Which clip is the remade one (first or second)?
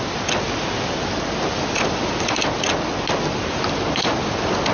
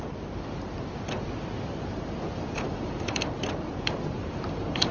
second